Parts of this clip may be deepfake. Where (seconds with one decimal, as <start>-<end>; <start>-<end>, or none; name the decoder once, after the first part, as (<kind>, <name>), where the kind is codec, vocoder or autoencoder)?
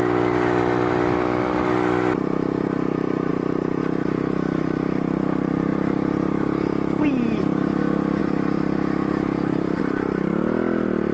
3.3-3.8 (vocoder, BigVGAN v2); 5.7-7.8; 8.2-9.8